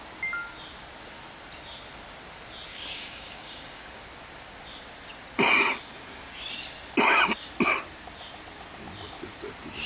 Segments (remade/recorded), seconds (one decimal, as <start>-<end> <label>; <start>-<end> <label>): 0.0-2.7 recorded; 2.7-4.0 remade; 4.0-9.9 recorded